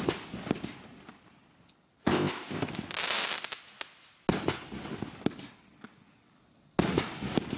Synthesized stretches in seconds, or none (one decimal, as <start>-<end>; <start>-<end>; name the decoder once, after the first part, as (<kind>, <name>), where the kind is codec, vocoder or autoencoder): 2.0-2.7 (codec, ZipCodec)